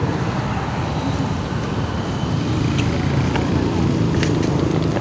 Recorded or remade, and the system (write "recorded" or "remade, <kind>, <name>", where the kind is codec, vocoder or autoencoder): recorded